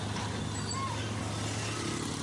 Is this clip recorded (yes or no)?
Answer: yes